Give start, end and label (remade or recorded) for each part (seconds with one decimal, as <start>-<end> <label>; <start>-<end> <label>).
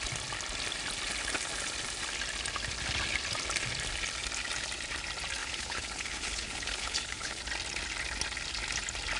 0.0-5.4 recorded; 5.4-7.4 remade; 7.4-9.2 recorded